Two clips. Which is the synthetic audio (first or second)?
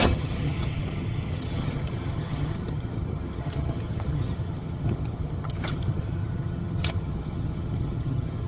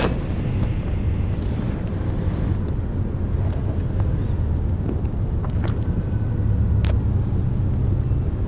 first